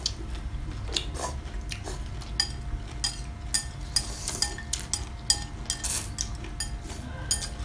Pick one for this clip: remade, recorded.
recorded